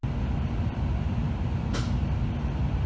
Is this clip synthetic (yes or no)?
no